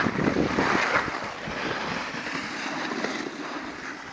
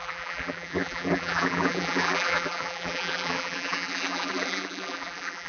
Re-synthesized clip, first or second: second